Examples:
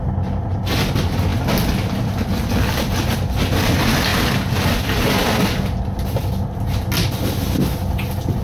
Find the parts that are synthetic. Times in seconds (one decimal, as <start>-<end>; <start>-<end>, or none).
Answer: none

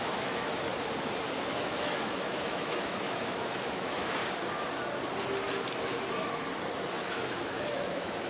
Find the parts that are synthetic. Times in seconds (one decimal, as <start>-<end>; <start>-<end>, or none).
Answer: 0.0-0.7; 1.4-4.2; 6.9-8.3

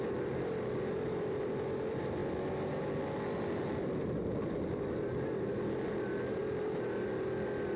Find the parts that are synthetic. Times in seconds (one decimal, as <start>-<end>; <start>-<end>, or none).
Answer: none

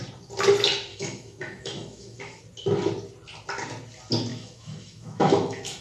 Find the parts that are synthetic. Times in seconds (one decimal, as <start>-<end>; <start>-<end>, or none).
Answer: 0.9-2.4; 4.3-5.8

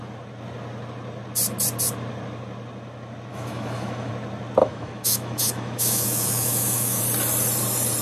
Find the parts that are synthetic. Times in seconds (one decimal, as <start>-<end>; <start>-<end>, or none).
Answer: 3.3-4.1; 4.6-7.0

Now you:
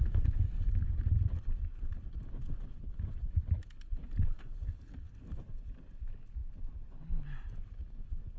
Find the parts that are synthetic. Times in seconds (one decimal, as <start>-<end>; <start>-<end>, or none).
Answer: none

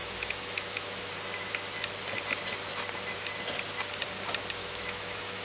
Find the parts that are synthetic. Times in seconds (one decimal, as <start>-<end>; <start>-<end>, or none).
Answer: 0.0-1.1; 4.6-5.4